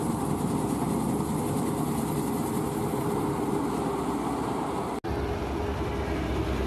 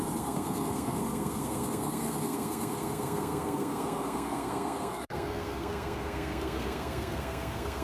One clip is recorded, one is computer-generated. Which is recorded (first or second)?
first